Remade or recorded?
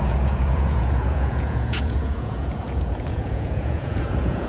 remade